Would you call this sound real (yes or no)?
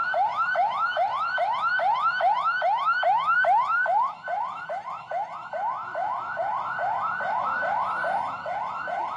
yes